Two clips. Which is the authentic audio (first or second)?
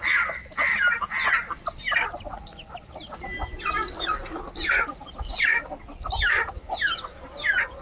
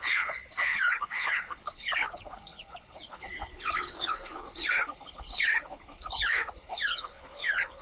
first